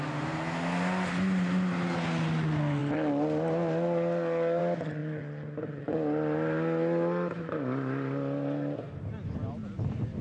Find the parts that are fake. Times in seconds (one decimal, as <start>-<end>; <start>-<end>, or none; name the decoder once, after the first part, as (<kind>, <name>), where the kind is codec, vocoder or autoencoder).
none